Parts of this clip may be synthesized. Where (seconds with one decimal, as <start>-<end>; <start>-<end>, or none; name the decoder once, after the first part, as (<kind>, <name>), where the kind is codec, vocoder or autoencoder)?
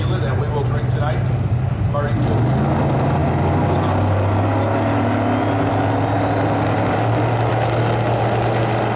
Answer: none